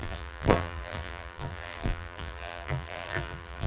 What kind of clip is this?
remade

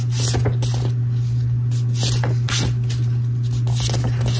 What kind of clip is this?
recorded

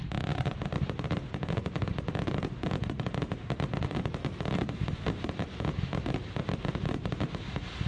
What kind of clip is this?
remade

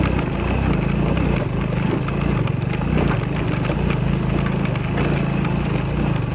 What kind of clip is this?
recorded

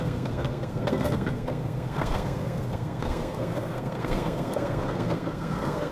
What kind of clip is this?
remade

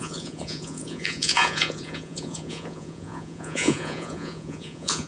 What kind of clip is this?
remade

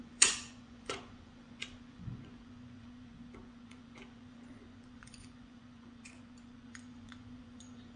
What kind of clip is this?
remade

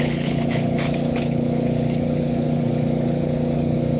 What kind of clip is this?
remade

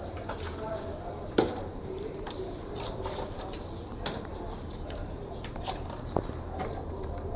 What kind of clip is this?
remade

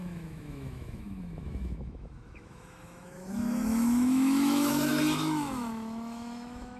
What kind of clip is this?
remade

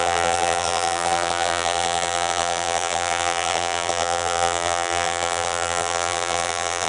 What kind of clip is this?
remade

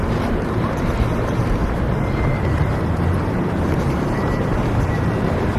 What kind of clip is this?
remade